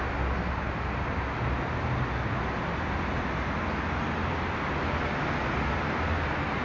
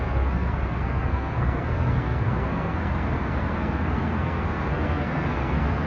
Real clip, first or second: first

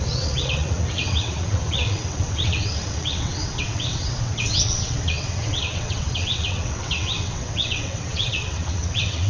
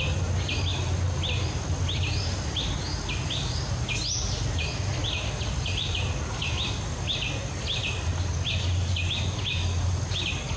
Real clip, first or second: second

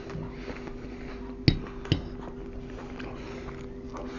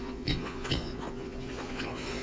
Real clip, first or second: first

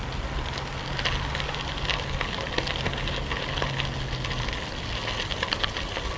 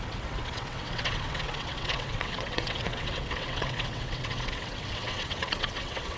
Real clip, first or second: first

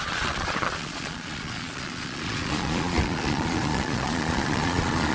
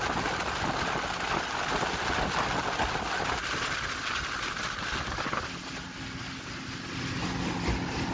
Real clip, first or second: second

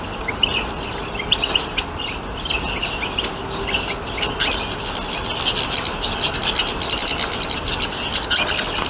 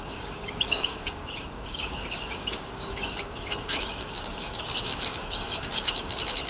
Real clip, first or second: first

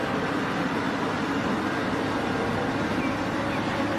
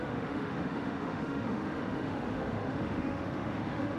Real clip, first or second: first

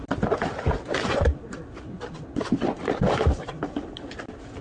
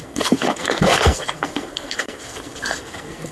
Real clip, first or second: first